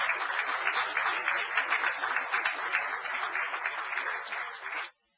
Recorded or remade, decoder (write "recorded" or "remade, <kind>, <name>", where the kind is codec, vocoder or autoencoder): recorded